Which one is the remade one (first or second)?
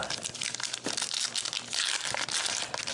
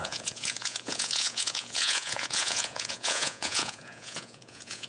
second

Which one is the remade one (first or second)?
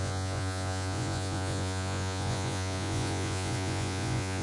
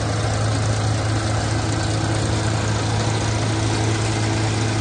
first